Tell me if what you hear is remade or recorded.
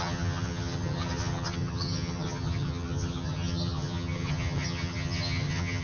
remade